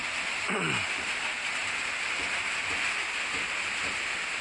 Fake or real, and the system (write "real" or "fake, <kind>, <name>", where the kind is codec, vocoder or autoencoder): real